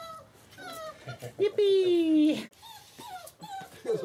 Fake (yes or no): no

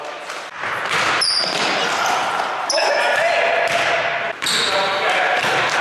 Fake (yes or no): no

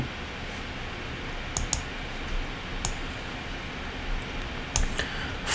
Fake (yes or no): no